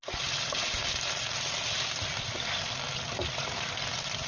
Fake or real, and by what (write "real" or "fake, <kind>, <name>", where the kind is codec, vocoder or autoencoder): real